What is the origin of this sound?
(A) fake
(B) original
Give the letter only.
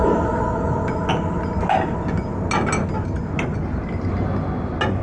B